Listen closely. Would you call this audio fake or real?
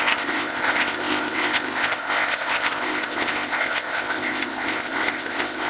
fake